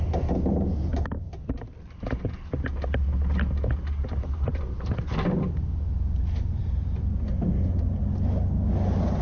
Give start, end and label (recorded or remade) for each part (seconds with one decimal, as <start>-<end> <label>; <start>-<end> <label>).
0.0-9.2 recorded